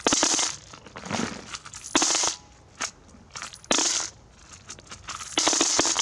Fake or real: real